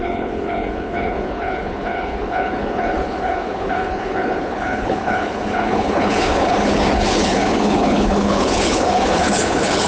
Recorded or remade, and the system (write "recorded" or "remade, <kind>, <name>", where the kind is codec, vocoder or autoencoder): remade, codec, HILCodec